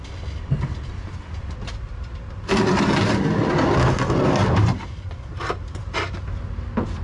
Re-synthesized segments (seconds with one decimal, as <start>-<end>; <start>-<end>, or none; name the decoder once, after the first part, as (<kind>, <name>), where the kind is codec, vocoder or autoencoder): 4.4-5.8 (vocoder, BigVGAN v2)